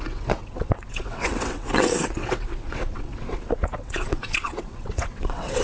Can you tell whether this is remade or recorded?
remade